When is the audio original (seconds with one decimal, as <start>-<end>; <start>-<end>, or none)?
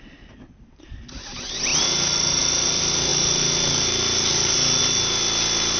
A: 0.0-5.8